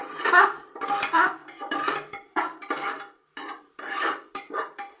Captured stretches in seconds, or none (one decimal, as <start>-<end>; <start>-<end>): none